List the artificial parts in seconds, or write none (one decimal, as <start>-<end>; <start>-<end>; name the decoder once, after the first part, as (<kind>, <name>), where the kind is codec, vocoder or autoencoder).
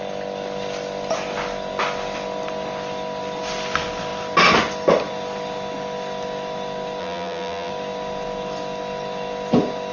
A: 7.0-7.7 (vocoder, BigVGAN v2)